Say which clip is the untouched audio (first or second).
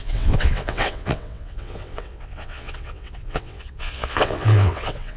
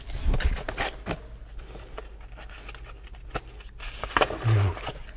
second